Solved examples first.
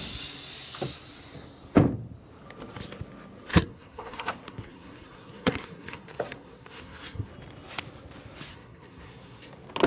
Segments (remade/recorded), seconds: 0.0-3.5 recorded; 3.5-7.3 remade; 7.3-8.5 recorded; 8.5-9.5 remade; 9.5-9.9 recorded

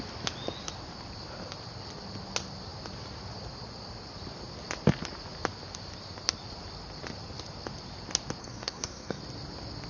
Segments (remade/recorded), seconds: 0.0-8.4 recorded; 8.4-9.2 remade; 9.2-9.9 recorded

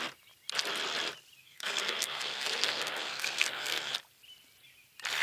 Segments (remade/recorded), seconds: 0.0-1.4 recorded; 1.4-3.9 remade; 3.9-5.2 recorded

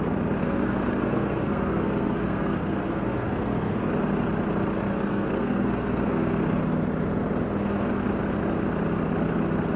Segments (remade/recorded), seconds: 0.0-0.4 recorded; 0.4-3.8 remade; 3.8-4.9 recorded; 4.9-6.4 remade; 6.4-9.8 recorded

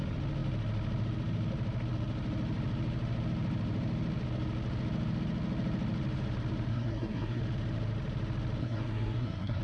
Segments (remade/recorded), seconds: 0.0-6.7 recorded; 6.7-7.4 remade; 7.4-8.6 recorded; 8.6-9.6 remade

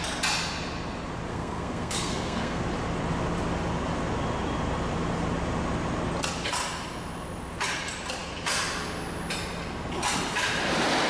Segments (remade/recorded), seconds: 0.0-1.3 recorded; 1.3-2.6 remade; 2.6-11.1 recorded

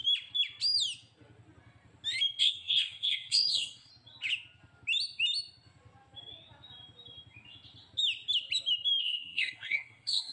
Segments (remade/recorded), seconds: 0.0-2.4 recorded; 2.4-3.9 remade; 3.9-9.0 recorded; 9.0-10.3 remade